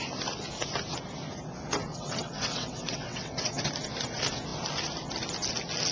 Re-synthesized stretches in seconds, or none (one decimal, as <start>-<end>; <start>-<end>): 1.9-3.6